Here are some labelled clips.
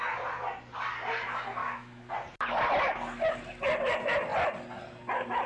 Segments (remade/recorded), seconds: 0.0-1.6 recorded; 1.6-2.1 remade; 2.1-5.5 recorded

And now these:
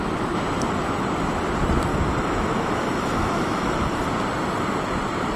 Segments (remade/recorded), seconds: 0.0-1.9 recorded; 1.9-4.1 remade; 4.1-5.4 recorded